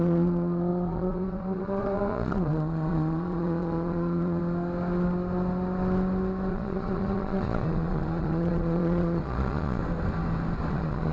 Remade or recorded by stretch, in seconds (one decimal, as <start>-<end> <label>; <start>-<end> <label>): 0.0-4.4 remade; 4.4-6.5 recorded; 6.5-9.8 remade; 9.8-10.7 recorded; 10.7-11.1 remade